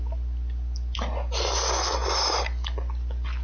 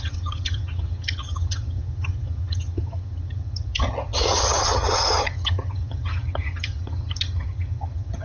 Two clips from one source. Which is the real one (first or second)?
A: first